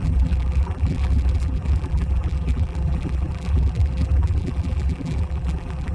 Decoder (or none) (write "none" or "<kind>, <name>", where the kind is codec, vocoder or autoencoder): vocoder, BigVGAN v2